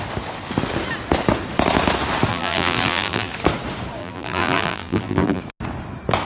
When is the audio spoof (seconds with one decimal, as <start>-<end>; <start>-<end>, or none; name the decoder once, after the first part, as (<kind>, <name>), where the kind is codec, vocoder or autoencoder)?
2.3-3.3 (vocoder, BigVGAN v2); 4.0-5.4